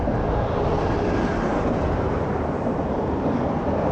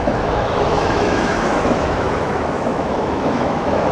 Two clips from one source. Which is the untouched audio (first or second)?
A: first